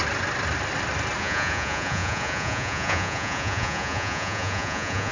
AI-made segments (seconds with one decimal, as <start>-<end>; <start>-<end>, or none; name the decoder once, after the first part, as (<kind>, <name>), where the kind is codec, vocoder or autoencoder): 1.2-5.1 (vocoder, Vocos)